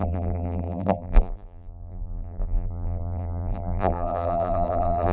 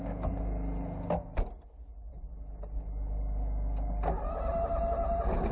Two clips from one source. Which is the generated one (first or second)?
first